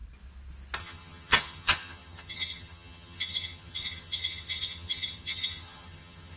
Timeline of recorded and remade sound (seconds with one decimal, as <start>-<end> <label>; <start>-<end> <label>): 0.0-0.8 recorded; 0.8-6.4 remade